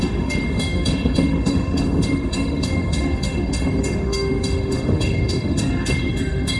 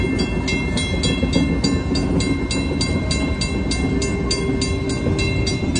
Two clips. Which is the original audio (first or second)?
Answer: second